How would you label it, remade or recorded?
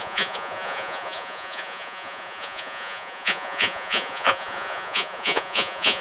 remade